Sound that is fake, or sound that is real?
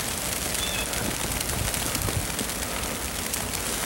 real